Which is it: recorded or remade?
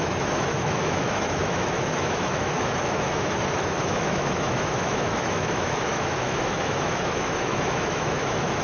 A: remade